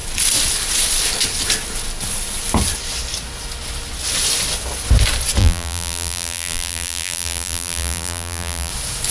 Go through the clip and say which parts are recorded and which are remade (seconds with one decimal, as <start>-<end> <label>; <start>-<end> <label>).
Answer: 0.0-5.4 recorded; 5.4-8.7 remade; 8.7-9.1 recorded